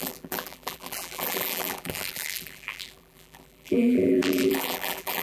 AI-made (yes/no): yes